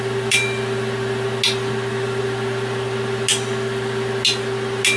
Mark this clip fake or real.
real